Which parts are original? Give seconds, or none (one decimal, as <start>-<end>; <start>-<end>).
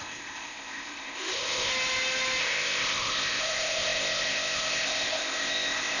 1.7-2.4